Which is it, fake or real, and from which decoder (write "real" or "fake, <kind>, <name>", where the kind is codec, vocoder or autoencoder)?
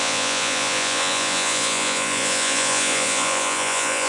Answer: fake, vocoder, Vocos